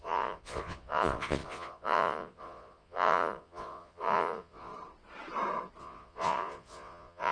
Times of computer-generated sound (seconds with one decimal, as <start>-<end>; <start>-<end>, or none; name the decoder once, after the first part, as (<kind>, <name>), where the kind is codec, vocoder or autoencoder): 0.0-4.7 (vocoder, Vocos); 5.8-7.3